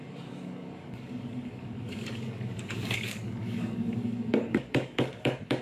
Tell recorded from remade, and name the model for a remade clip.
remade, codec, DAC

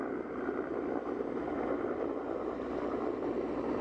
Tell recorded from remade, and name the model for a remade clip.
recorded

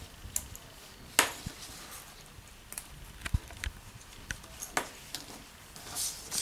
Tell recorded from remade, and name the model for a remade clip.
recorded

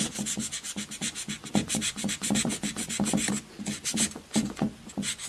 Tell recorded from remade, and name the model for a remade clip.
remade, vocoder, Vocos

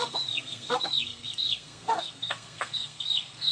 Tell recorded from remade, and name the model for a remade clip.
remade, codec, SNAC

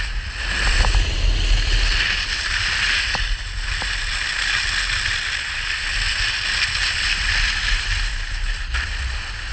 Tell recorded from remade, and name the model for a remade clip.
recorded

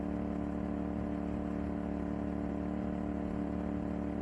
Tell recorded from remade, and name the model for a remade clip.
recorded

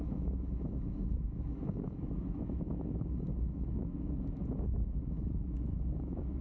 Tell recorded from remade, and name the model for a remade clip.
remade, autoencoder, DAC-VAE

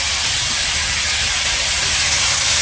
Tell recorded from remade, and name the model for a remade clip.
recorded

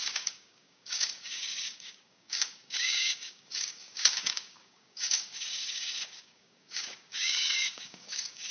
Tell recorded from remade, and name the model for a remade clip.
remade, codec, DAC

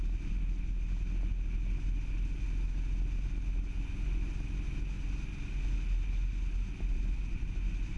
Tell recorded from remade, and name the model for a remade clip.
recorded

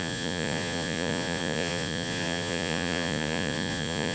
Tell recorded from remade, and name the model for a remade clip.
remade, vocoder, Vocos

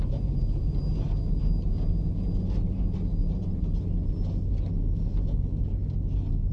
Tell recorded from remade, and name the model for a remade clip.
recorded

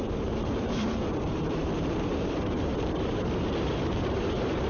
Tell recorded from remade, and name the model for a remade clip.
remade, vocoder, BigVGAN v2